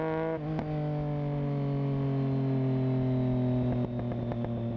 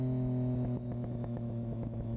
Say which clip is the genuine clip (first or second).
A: first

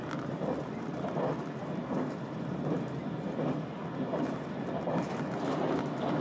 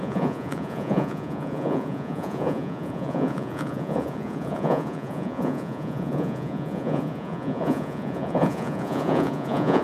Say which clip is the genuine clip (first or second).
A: first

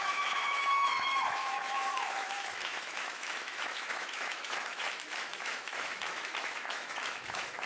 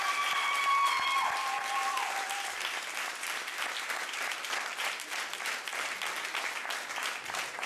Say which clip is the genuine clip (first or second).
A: second